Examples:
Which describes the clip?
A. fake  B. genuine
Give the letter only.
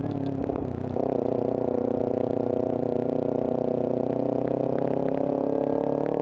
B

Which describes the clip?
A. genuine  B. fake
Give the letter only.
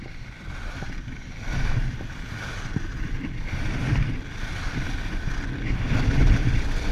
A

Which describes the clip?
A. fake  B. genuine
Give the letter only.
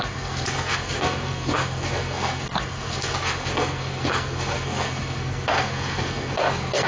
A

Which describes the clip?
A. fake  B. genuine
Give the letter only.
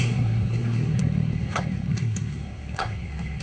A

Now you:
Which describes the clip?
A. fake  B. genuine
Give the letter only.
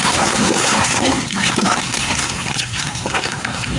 A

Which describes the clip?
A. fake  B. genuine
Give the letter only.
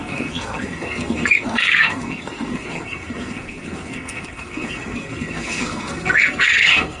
A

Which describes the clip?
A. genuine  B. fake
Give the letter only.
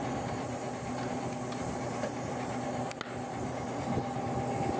A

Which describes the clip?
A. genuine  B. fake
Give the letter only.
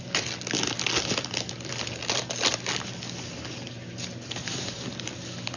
A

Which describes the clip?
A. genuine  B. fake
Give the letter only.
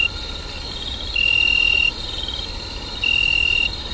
A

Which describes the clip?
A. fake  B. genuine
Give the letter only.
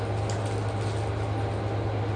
B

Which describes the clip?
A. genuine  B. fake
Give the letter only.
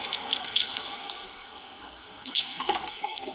B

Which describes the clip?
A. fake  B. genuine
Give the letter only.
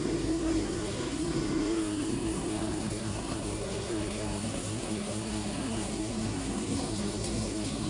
A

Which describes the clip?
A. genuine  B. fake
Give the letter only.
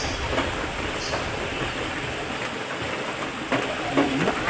A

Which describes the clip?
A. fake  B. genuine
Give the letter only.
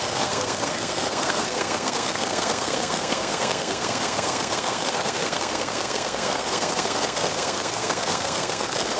A